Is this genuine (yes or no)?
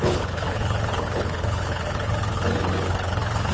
no